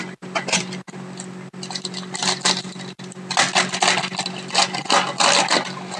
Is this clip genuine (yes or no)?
yes